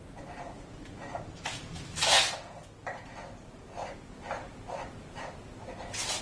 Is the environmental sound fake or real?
real